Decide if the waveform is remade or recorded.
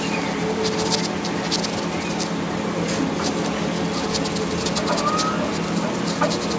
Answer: recorded